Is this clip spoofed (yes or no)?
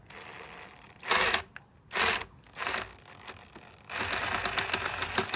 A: no